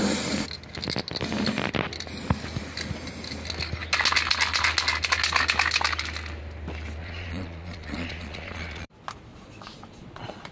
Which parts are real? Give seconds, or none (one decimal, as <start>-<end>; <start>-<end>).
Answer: 0.0-7.0; 8.9-9.3